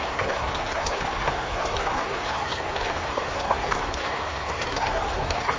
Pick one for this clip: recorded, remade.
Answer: remade